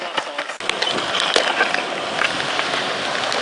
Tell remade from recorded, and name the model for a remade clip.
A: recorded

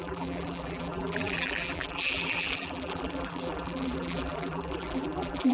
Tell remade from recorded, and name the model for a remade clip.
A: remade, vocoder, BigVGAN v2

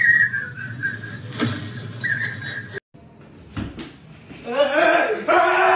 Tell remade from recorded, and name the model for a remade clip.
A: recorded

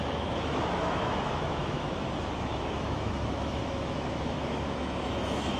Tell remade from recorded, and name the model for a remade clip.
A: remade, autoencoder, DAC-VAE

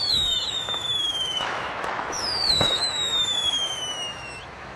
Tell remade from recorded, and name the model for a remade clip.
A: remade, autoencoder, DAC-VAE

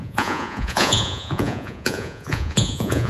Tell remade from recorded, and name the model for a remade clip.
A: remade, vocoder, Vocos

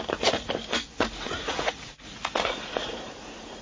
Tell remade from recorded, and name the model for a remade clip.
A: remade, vocoder, Vocos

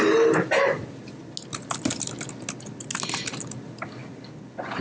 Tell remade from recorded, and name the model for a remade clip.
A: recorded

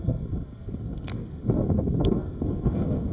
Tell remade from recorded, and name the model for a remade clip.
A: remade, codec, SNAC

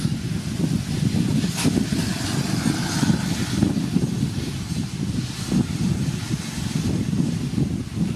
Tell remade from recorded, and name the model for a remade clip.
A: recorded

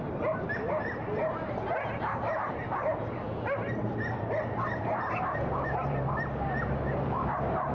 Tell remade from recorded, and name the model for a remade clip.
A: remade, vocoder, BigVGAN v2